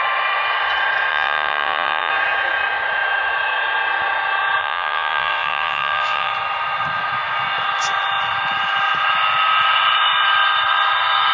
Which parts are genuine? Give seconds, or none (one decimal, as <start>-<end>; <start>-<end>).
0.0-1.1; 2.1-4.6; 6.3-11.3